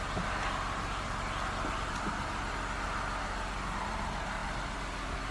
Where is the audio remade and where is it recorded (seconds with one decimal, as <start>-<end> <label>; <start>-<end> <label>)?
0.0-5.3 recorded